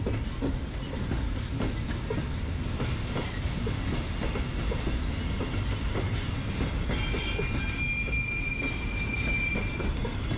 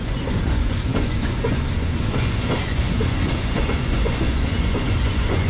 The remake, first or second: second